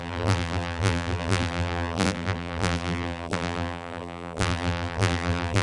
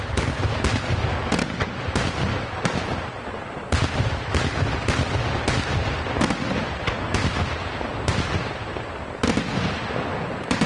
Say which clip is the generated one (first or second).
first